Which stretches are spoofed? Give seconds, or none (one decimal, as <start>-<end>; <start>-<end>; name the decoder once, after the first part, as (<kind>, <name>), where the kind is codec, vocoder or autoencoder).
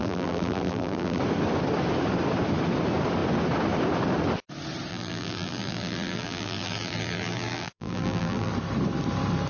0.0-1.2 (vocoder, BigVGAN v2); 4.9-8.5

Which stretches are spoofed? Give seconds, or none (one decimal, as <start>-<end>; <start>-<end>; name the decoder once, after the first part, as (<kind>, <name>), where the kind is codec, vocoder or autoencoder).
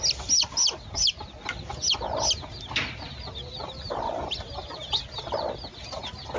none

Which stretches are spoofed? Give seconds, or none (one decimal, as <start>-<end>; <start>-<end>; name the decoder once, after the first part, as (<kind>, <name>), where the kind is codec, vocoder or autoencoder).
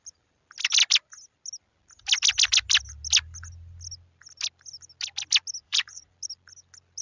5.6-6.1 (vocoder, Vocos)